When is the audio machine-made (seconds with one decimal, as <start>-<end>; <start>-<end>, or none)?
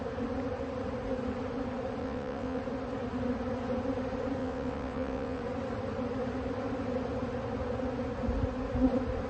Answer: 2.0-2.6; 4.4-5.4